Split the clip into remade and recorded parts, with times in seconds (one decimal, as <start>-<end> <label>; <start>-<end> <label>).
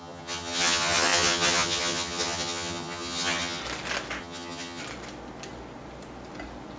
0.0-3.6 remade; 3.6-4.2 recorded; 4.2-4.8 remade; 4.8-6.8 recorded